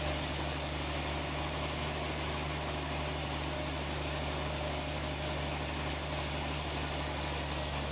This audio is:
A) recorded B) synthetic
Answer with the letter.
A